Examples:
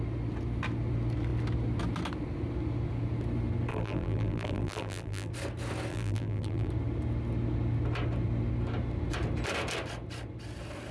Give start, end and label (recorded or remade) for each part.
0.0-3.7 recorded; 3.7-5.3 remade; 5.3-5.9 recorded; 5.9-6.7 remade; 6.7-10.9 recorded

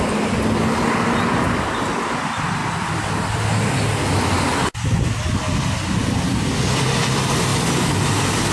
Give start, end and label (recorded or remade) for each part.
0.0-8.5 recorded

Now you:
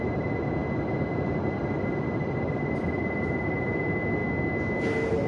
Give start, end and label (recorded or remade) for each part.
0.0-0.6 recorded; 0.6-3.8 remade; 3.8-5.3 recorded

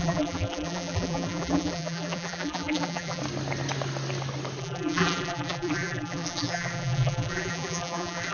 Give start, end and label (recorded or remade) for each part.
0.0-3.2 remade; 3.2-4.6 recorded; 4.6-8.3 remade